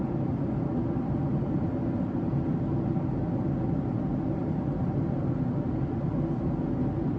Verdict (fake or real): real